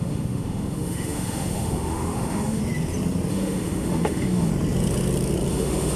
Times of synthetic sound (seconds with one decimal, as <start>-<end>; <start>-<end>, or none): 0.0-2.6; 3.3-4.5; 5.5-6.0